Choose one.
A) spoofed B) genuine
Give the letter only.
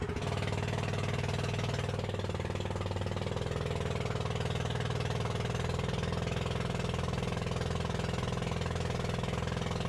B